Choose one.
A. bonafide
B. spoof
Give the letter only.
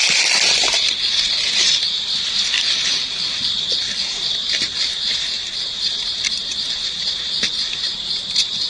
A